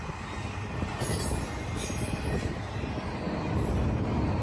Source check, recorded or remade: recorded